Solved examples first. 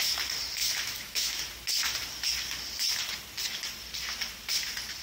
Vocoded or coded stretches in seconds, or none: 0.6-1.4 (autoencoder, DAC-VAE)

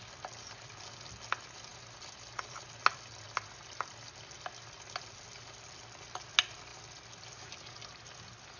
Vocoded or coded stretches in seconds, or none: none